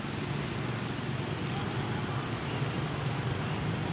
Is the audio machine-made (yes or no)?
no